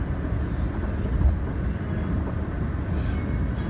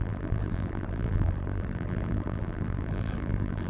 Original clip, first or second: first